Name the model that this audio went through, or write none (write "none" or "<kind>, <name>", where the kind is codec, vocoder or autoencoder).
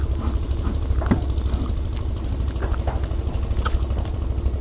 none